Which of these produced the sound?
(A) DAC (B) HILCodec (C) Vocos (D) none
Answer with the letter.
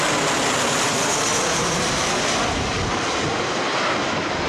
D